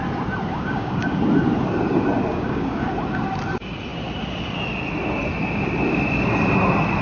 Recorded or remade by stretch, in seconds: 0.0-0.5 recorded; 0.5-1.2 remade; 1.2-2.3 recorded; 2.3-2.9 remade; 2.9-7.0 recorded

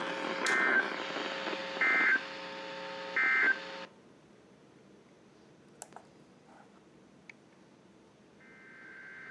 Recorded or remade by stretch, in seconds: 0.0-9.3 recorded